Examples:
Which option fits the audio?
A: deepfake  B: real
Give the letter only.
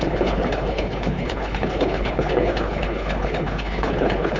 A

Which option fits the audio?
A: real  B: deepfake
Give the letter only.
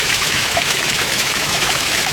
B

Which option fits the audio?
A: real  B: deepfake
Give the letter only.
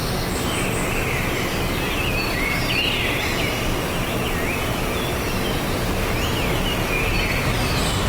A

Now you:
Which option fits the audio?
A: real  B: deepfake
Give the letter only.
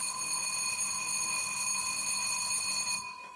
A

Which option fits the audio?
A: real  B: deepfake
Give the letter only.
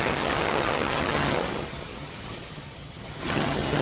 B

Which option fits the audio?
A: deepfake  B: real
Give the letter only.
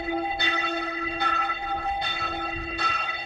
A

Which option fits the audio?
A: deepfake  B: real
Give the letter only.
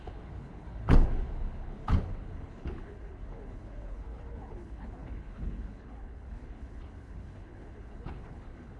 A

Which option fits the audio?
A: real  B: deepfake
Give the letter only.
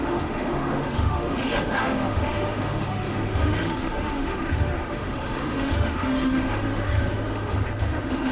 B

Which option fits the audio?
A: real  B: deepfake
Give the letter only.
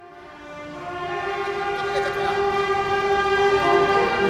A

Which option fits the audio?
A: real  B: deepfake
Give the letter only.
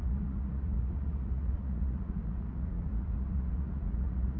B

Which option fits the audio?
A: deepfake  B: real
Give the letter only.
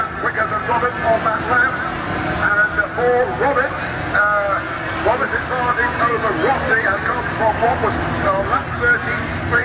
B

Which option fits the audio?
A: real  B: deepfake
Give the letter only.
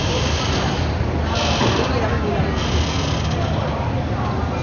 A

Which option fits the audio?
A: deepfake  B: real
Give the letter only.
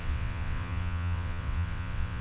A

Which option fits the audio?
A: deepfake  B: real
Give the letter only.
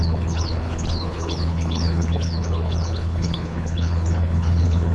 A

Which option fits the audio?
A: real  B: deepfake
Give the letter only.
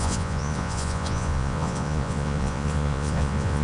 B